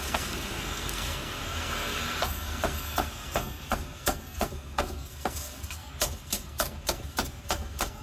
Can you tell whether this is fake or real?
fake